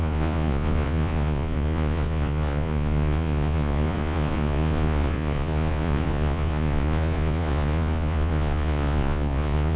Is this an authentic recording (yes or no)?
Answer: no